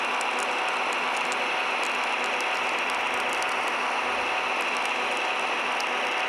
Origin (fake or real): real